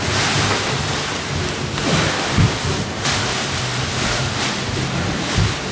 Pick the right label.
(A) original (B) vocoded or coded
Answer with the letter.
A